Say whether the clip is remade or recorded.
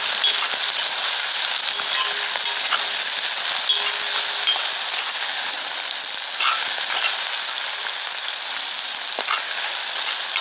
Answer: recorded